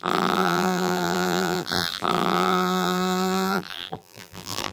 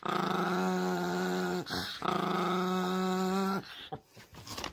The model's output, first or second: first